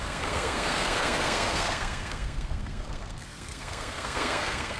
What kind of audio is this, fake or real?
fake